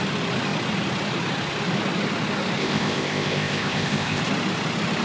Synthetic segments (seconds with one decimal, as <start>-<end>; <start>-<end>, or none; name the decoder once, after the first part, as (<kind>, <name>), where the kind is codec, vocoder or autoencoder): 2.6-4.2 (codec, ZipCodec)

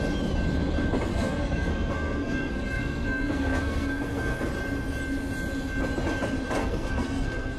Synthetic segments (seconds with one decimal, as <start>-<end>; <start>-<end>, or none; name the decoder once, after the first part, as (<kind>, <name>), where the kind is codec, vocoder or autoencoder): 1.1-4.5 (codec, SNAC); 6.6-7.6

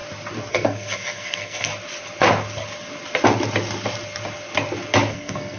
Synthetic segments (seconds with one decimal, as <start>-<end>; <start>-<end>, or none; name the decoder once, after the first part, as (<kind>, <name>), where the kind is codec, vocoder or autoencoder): 0.5-1.7 (codec, SNAC); 5.1-5.6

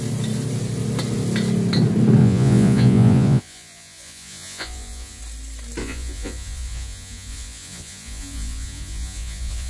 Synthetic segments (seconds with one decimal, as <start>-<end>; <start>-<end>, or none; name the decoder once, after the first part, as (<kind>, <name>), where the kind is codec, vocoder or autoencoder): 2.2-5.2 (vocoder, Vocos); 5.8-9.7

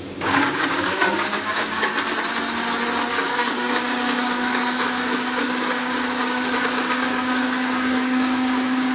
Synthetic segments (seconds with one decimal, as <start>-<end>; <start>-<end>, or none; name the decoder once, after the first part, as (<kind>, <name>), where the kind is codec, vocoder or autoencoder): 0.0-1.9 (codec, DAC); 3.1-8.9